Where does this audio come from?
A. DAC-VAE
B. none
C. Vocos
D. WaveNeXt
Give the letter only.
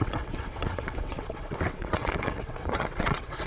D